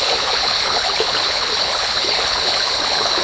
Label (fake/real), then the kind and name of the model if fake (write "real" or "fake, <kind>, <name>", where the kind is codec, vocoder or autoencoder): fake, codec, HILCodec